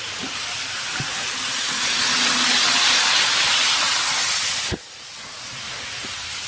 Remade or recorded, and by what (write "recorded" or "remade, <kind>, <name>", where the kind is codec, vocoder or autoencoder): recorded